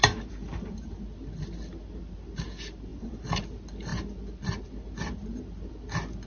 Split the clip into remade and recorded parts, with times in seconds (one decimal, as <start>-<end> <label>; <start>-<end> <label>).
0.0-1.0 remade; 1.0-2.9 recorded; 2.9-3.4 remade; 3.4-6.3 recorded